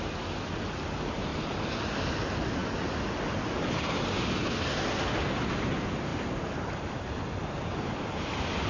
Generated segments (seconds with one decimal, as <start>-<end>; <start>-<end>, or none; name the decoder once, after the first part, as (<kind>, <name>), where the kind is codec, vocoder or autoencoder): none